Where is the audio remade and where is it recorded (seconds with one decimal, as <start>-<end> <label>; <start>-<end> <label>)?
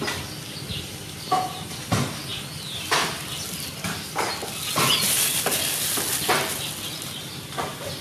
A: 0.0-8.0 recorded